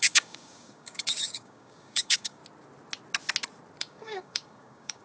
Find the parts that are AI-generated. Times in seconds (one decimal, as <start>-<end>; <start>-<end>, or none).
0.0-2.4; 3.8-5.0